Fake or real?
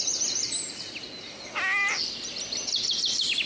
real